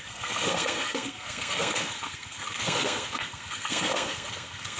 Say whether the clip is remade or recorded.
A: remade